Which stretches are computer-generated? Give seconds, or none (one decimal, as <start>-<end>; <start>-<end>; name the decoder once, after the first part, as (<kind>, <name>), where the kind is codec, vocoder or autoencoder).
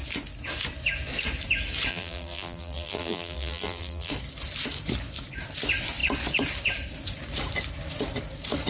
1.9-4.1 (vocoder, BigVGAN v2)